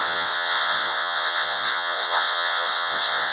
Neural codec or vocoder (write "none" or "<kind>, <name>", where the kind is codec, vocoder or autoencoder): vocoder, WaveNeXt